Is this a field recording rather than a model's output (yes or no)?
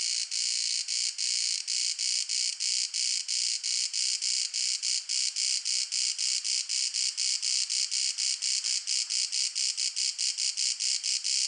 yes